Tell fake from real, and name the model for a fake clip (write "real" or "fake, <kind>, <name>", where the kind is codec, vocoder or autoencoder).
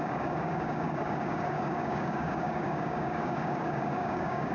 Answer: fake, codec, DAC